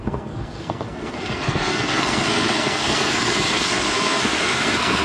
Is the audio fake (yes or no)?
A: yes